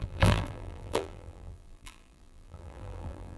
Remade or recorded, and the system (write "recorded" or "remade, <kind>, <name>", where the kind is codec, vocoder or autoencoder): remade, vocoder, BigVGAN v2